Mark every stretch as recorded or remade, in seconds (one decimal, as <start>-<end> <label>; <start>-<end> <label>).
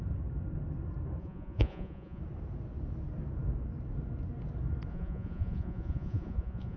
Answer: 0.0-1.2 recorded; 1.2-2.2 remade; 2.2-4.9 recorded; 4.9-6.8 remade